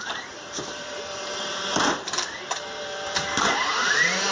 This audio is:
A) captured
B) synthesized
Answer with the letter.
B